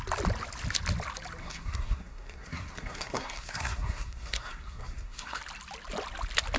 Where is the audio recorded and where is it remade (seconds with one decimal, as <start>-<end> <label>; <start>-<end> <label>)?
0.0-1.4 recorded; 1.4-5.4 remade; 5.4-6.6 recorded